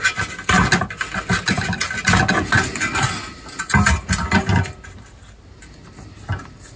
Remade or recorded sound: recorded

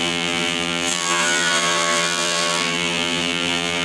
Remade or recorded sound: remade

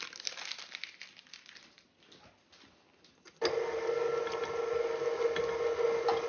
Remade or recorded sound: recorded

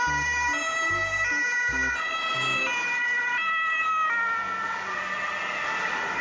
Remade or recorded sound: recorded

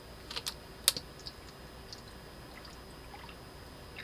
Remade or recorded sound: recorded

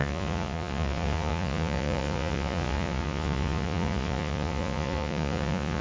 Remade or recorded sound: remade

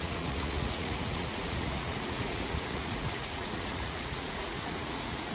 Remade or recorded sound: remade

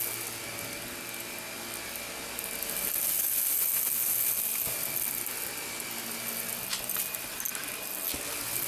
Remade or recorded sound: recorded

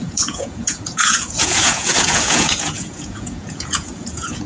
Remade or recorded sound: remade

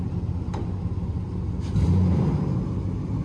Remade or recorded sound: recorded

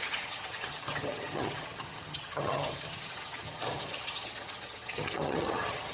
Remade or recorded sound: remade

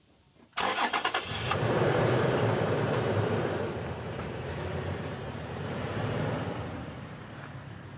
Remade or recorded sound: remade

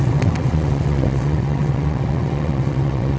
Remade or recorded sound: remade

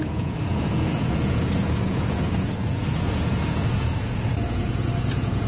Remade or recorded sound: remade